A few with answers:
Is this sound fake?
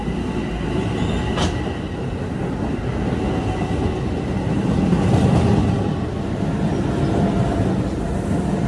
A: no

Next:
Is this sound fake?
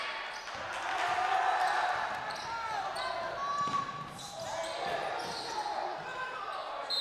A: no